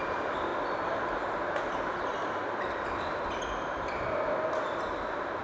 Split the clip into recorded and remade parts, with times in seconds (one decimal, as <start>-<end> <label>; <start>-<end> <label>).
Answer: 0.0-0.5 remade; 0.5-1.5 recorded; 1.5-2.1 remade; 2.1-5.4 recorded